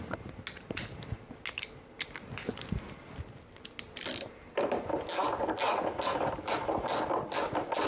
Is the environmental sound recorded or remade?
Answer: recorded